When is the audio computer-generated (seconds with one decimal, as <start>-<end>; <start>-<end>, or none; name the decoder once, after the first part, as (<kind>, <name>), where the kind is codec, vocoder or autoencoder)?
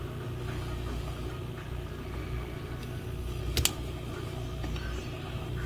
2.8-3.4 (autoencoder, DAC-VAE)